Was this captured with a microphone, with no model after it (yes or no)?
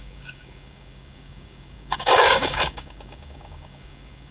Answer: no